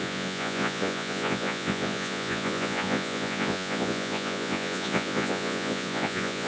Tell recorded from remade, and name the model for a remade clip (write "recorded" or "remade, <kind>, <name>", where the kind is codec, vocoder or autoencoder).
remade, vocoder, Vocos